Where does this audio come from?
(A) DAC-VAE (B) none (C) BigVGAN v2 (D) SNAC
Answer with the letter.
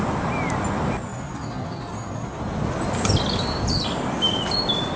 B